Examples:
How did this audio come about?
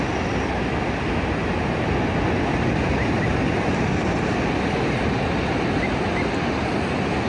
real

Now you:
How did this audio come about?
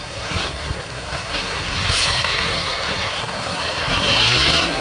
fake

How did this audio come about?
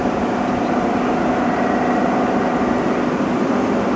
real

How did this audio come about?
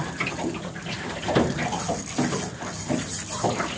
real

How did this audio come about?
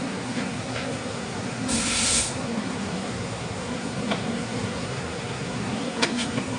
fake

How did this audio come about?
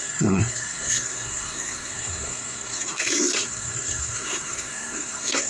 fake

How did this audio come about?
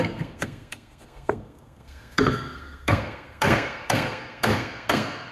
fake